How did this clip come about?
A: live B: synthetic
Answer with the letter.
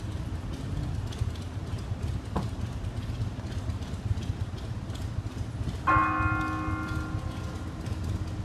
A